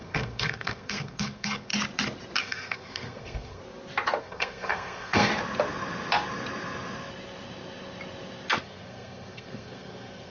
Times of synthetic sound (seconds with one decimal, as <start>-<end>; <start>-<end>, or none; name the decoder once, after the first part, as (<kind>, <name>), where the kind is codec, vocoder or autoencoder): 0.0-1.7 (codec, SNAC); 2.4-3.6; 4.2-5.3; 8.6-10.3